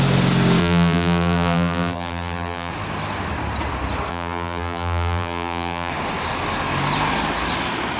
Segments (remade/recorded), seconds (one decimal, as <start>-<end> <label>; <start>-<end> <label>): 0.0-0.6 recorded; 0.6-2.7 remade; 2.7-4.1 recorded; 4.1-5.9 remade; 5.9-8.0 recorded